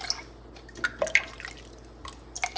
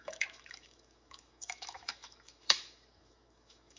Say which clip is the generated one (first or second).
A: second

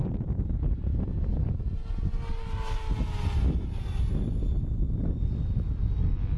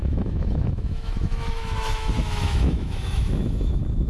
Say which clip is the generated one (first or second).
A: second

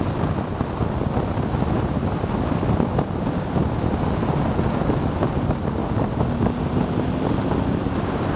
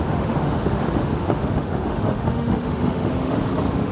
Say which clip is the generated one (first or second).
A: second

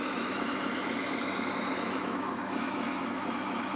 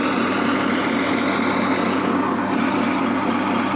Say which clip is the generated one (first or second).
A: first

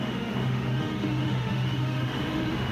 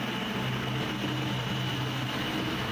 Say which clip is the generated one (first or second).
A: first